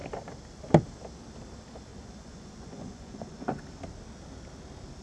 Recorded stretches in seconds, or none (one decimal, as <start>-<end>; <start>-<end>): 0.0-1.9; 3.6-5.0

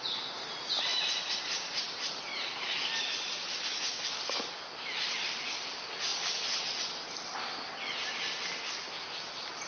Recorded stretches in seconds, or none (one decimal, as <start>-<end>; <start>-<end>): 0.0-9.7